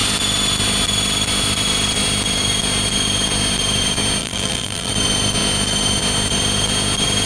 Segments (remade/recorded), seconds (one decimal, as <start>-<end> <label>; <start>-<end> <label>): 0.0-4.2 recorded; 4.2-4.9 remade; 4.9-7.3 recorded